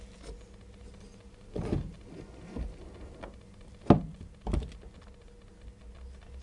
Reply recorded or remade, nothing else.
recorded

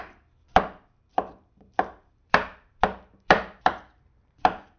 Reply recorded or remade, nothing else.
remade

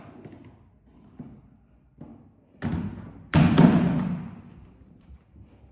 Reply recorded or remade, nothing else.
recorded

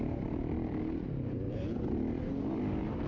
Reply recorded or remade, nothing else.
remade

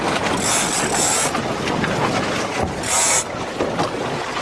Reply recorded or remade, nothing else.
recorded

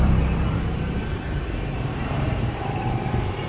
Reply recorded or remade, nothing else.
remade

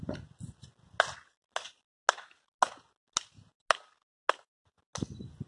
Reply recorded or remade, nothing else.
recorded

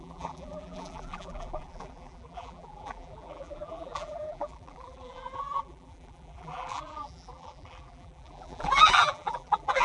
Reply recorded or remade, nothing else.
remade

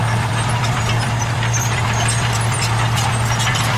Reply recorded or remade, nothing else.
remade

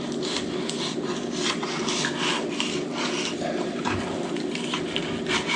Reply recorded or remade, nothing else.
remade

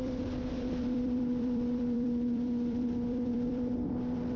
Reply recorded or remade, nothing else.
remade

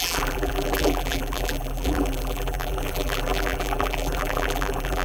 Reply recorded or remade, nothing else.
remade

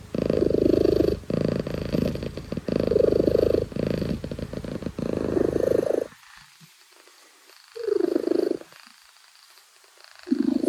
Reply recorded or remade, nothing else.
recorded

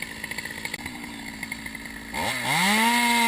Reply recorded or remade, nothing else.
recorded